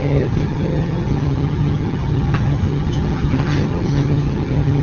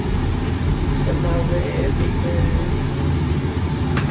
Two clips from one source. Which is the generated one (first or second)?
first